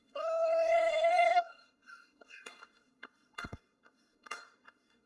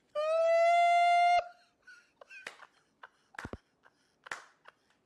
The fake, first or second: first